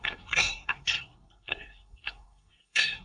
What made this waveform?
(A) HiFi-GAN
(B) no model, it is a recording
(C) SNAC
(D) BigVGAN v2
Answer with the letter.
C